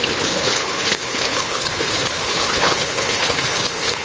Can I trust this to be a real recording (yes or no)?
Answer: no